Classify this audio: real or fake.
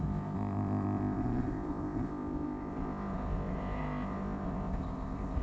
fake